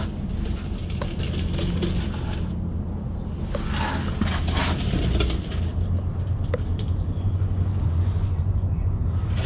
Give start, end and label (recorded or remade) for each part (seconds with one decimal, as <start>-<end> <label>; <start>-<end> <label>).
0.0-6.7 recorded; 6.7-9.0 remade; 9.0-9.5 recorded